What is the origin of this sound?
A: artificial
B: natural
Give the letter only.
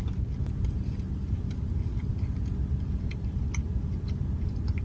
B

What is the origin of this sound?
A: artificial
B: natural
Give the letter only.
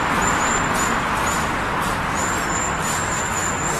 B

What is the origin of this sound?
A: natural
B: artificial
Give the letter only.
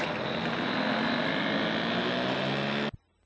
A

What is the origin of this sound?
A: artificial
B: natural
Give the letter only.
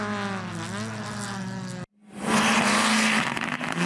B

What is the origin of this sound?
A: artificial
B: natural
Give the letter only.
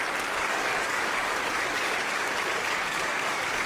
A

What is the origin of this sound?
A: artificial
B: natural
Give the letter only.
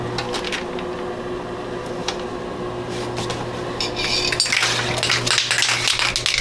B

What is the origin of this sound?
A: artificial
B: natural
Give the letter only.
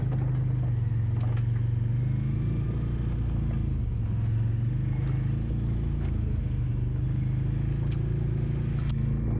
B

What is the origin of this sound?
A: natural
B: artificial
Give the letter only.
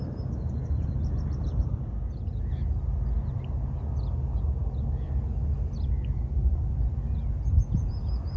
A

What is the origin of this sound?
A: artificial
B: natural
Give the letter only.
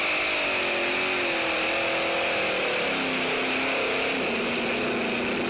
B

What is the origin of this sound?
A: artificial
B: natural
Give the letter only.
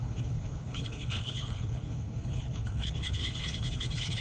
A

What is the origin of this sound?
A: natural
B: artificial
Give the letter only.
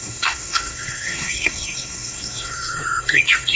B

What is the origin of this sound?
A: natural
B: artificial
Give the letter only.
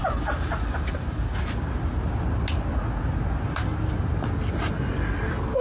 A